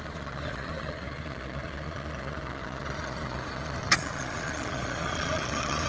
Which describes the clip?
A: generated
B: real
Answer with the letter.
A